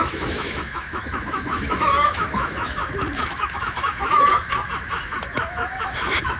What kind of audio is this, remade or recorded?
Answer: remade